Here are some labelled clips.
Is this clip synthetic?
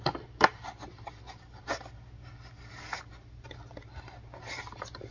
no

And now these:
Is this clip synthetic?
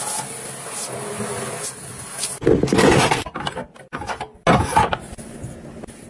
no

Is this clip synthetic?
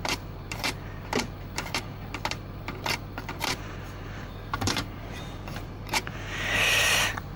yes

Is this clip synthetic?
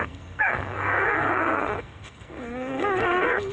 yes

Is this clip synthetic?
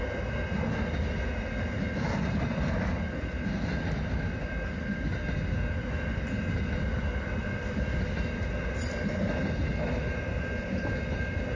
no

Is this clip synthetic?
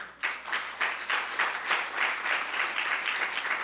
no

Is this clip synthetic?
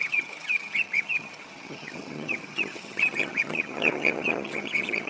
yes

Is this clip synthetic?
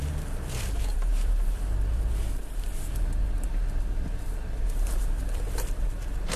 yes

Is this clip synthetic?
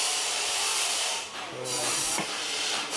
yes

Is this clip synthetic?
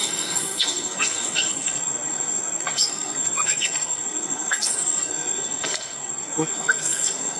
yes